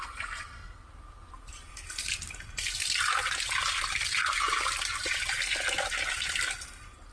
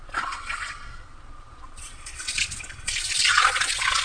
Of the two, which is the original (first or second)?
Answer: first